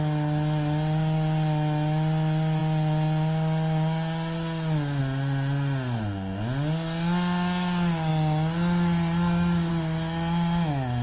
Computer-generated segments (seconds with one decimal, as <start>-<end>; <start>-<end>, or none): none